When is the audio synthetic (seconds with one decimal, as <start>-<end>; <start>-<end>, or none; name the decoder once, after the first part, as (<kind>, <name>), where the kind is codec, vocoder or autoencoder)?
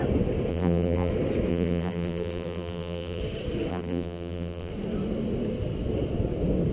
0.5-1.1 (vocoder, BigVGAN v2); 1.5-3.2; 3.7-4.7